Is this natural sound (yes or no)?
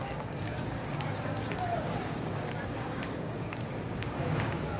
no